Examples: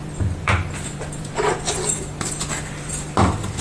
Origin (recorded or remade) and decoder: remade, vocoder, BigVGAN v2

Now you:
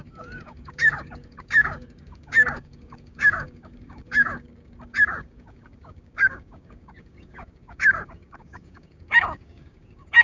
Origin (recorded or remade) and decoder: remade, codec, DAC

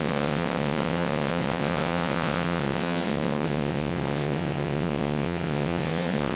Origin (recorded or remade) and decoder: remade, vocoder, WaveNeXt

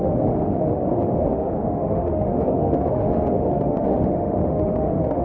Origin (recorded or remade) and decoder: remade, autoencoder, DAC-VAE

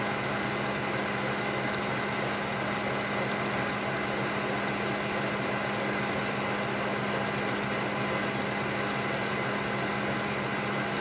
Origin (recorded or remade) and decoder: recorded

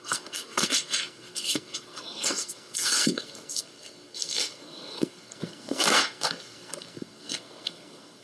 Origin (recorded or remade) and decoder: remade, codec, SNAC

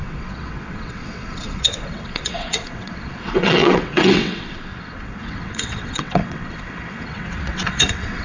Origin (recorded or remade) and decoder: remade, vocoder, WaveNeXt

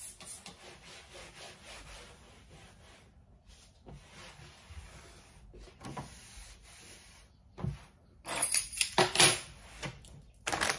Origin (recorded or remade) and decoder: recorded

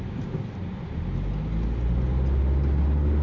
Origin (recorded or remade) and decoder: recorded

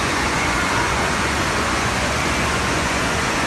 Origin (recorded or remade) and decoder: remade, vocoder, Vocos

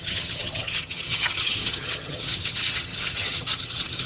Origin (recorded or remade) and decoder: remade, vocoder, HiFi-GAN